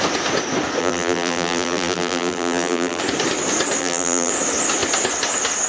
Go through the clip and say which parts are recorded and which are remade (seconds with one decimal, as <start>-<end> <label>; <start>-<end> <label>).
0.0-0.8 recorded; 0.8-3.0 remade; 3.0-3.8 recorded; 3.8-4.3 remade; 4.3-5.7 recorded